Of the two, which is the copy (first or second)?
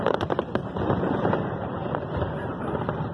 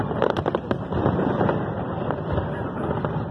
first